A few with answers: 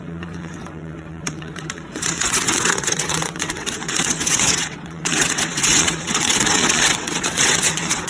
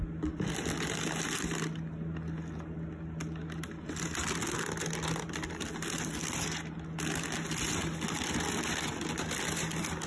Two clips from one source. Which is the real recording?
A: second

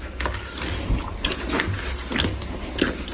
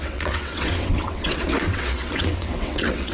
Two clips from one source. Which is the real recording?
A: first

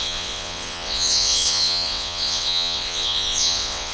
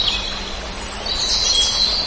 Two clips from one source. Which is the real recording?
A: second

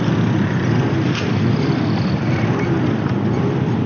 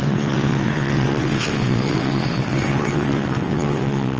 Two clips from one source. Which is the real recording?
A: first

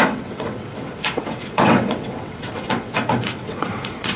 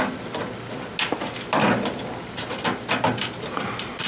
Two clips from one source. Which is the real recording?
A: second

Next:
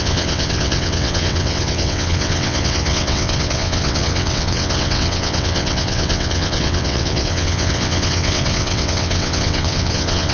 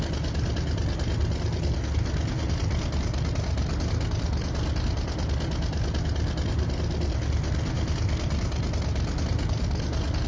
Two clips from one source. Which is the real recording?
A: second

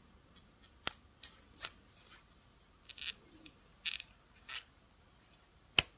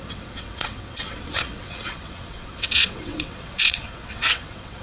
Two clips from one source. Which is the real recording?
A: first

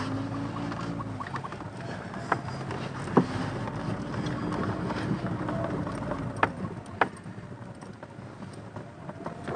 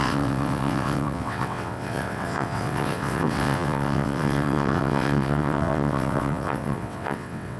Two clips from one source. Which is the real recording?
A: first